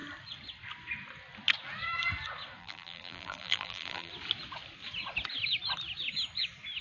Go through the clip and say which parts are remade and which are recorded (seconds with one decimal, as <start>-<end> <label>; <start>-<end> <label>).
0.0-2.6 recorded; 2.6-4.1 remade; 4.1-6.8 recorded

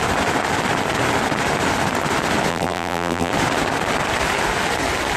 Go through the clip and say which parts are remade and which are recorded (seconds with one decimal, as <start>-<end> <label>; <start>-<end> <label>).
0.0-2.5 recorded; 2.5-3.3 remade; 3.3-5.2 recorded

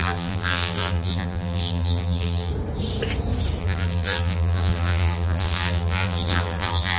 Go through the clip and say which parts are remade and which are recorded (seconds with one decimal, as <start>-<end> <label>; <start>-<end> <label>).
0.0-2.5 remade; 2.5-3.6 recorded; 3.6-7.0 remade

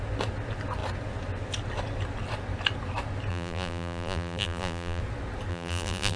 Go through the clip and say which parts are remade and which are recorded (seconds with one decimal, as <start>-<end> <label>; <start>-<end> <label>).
0.0-3.3 recorded; 3.3-5.0 remade; 5.0-5.5 recorded; 5.5-6.2 remade

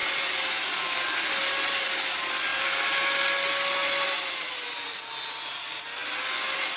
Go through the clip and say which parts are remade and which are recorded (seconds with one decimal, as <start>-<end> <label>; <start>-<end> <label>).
0.0-2.0 remade; 2.0-6.8 recorded

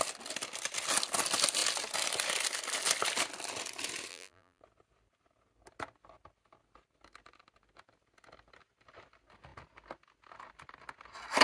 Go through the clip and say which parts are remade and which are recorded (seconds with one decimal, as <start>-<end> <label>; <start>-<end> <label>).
0.0-4.1 recorded; 4.1-4.6 remade; 4.6-11.4 recorded